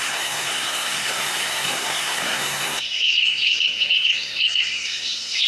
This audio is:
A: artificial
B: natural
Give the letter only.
A